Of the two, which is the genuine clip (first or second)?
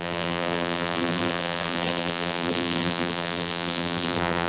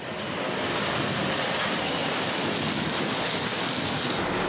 second